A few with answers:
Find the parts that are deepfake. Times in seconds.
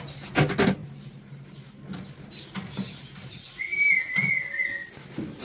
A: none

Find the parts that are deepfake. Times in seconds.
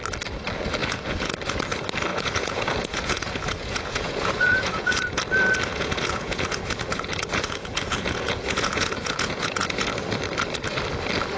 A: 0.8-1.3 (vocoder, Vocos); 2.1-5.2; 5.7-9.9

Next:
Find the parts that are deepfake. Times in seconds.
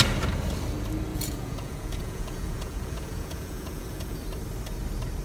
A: 1.1-4.2 (vocoder, Vocos)